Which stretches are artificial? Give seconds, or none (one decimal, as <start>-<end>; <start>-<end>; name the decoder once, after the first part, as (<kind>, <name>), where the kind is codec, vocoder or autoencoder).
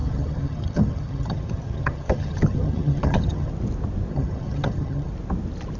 0.0-3.5 (vocoder, HiFi-GAN); 4.1-5.1